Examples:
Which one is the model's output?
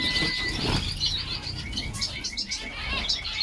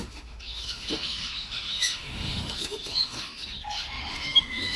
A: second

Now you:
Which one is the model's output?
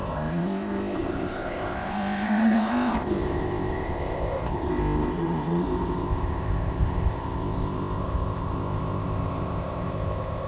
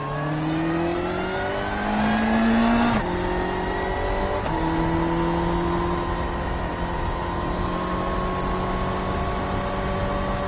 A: first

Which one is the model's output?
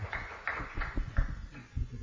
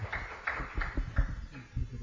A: first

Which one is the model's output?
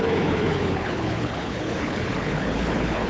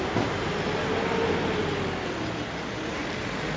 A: first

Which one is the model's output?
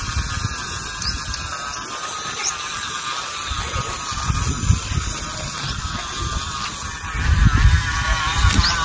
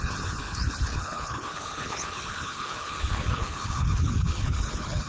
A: second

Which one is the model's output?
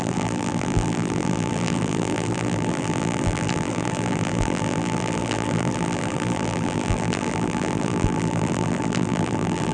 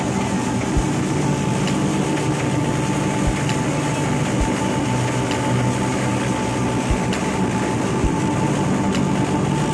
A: first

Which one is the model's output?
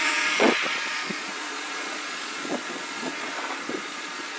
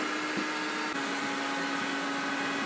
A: first